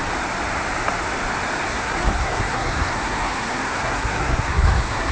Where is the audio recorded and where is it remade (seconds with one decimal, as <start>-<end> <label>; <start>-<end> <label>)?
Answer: 0.0-1.7 recorded; 1.7-5.1 remade